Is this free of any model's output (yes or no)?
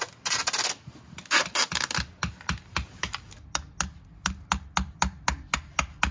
yes